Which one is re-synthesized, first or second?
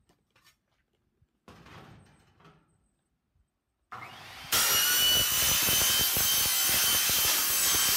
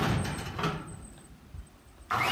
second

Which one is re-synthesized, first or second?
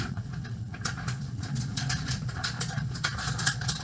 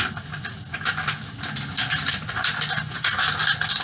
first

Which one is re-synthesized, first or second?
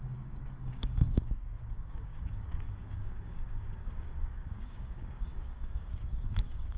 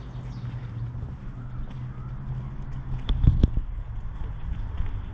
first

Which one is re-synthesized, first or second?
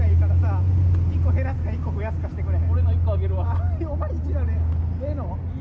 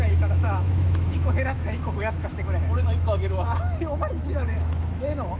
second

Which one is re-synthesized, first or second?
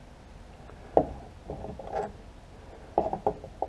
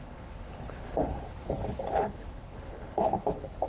second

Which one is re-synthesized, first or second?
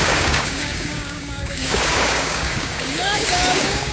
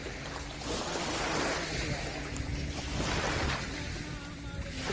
first